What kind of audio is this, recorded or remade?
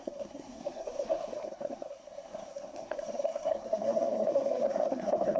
remade